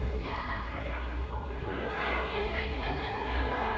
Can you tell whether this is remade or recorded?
remade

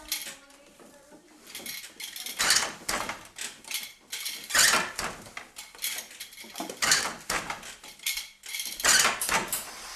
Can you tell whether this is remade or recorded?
recorded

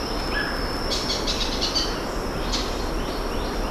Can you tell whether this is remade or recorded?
recorded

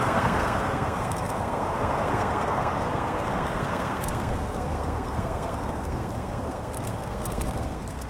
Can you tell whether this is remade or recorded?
remade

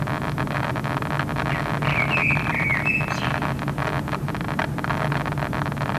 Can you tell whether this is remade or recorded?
recorded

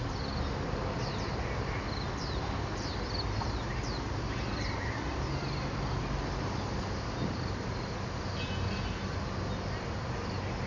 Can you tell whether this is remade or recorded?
recorded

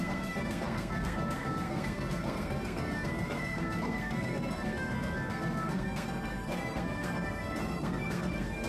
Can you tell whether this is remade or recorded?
remade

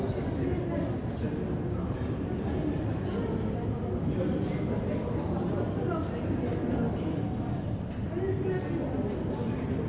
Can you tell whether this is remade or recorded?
recorded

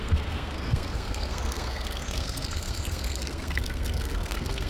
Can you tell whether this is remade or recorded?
remade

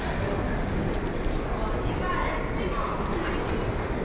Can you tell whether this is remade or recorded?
recorded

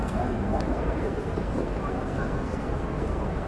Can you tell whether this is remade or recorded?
remade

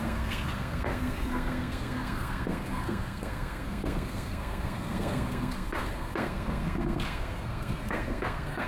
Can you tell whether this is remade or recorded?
remade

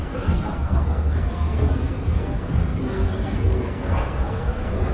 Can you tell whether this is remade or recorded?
remade